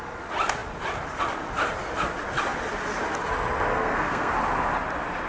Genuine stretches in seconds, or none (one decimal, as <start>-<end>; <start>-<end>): 0.0-3.7; 4.3-5.3